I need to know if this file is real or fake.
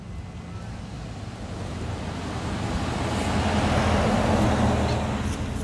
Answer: real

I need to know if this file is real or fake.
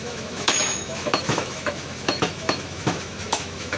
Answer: fake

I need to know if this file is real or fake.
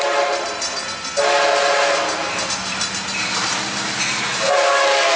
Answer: real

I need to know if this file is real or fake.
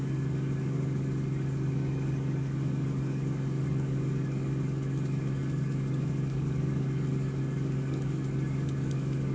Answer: fake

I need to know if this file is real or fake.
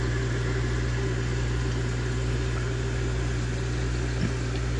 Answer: real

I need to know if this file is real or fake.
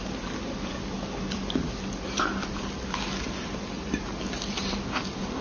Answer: real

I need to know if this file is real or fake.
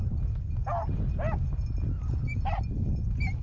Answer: real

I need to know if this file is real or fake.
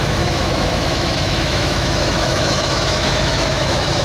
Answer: fake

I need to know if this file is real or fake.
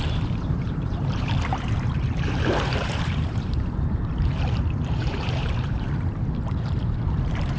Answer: fake